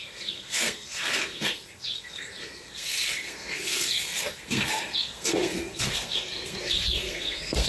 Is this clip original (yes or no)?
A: no